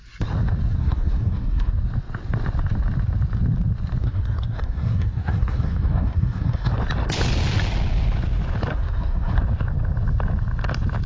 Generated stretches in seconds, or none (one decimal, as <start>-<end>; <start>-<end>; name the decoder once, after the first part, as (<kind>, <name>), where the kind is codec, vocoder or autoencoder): 0.8-1.7 (codec, SNAC); 4.0-6.7; 8.7-9.4